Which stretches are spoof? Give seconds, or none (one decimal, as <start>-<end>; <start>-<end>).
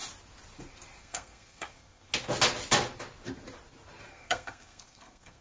1.0-2.1; 4.1-5.4